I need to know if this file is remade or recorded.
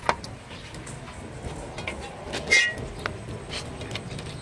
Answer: recorded